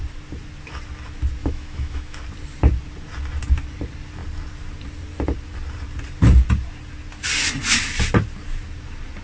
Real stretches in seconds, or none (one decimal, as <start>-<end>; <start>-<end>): 0.0-1.4; 2.2-9.2